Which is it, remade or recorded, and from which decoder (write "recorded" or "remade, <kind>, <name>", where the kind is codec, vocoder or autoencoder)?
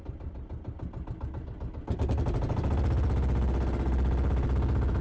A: recorded